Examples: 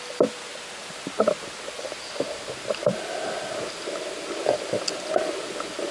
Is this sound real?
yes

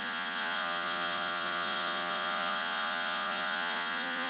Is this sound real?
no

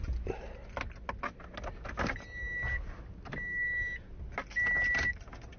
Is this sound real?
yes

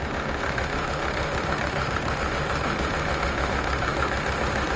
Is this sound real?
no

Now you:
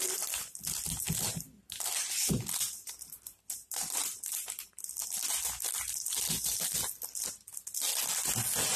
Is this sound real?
yes